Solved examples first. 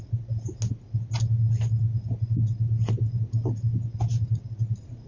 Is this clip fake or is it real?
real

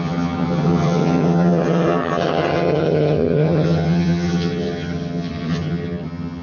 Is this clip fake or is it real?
fake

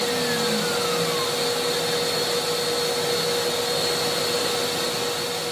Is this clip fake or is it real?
real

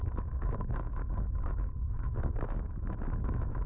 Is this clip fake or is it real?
fake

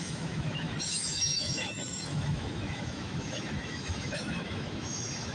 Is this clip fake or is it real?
fake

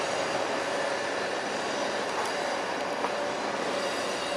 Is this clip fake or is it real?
real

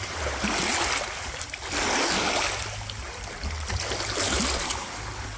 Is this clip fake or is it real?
real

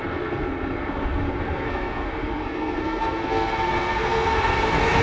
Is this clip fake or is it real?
fake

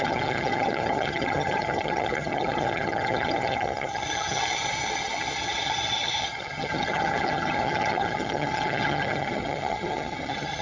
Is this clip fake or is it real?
fake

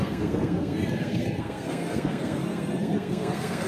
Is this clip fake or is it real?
fake